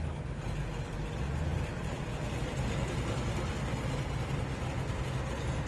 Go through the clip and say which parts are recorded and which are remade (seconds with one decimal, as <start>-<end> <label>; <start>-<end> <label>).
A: 0.0-5.7 recorded